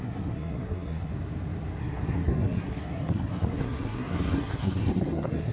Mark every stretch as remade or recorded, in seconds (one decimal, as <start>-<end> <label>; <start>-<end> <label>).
0.0-1.1 remade; 1.1-1.8 recorded; 1.8-5.5 remade